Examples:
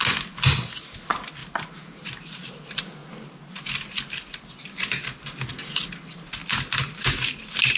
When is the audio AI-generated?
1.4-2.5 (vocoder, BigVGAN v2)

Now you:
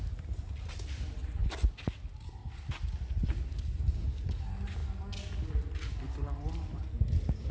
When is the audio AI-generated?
none